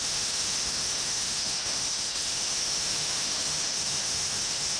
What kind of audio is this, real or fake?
fake